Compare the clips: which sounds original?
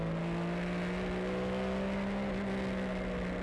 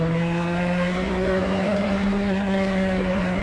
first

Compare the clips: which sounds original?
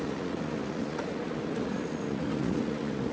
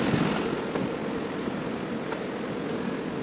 second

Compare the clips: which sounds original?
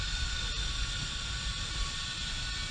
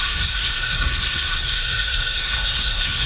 first